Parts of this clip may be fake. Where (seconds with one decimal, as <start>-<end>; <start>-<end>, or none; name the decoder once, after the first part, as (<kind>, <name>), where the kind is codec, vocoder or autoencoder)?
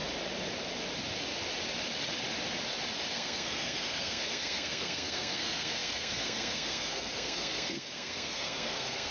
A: 3.1-9.1 (codec, SNAC)